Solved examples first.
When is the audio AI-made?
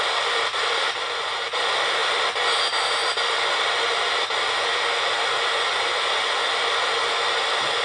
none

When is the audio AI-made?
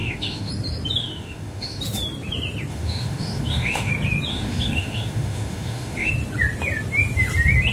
0.0-0.5; 1.0-1.8; 2.7-3.9; 4.3-6.1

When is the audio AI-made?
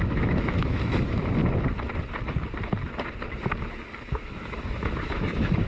0.0-1.4; 4.0-5.7